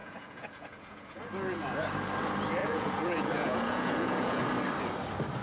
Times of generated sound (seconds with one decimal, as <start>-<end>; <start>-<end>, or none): 0.0-1.2; 2.6-4.4